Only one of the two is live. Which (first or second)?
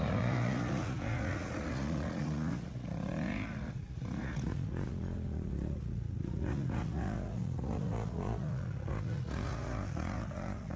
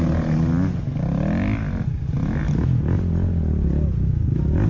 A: second